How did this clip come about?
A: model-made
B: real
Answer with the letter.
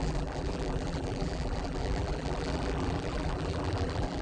A